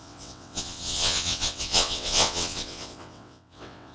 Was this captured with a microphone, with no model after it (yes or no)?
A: no